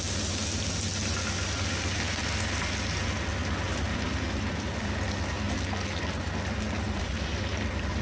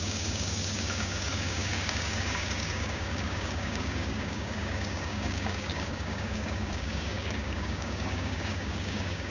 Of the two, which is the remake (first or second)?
second